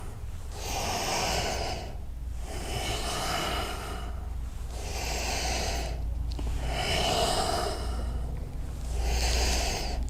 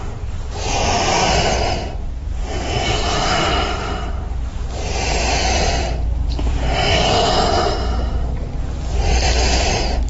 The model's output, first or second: second